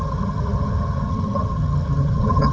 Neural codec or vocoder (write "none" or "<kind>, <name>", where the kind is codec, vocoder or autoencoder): vocoder, HiFi-GAN